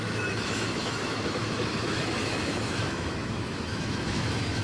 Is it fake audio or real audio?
fake